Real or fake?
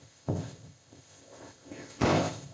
fake